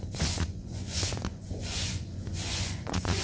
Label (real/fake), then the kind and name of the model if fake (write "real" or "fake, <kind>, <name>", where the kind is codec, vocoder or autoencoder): fake, vocoder, Vocos